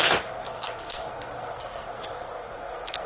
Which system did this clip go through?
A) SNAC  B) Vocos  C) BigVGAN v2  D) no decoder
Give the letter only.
A